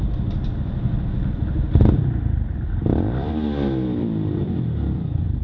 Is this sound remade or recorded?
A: remade